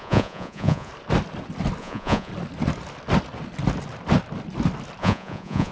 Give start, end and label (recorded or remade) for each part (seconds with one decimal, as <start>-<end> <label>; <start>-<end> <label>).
0.0-0.9 remade; 0.9-1.8 recorded; 1.8-2.3 remade; 2.3-5.0 recorded; 5.0-5.7 remade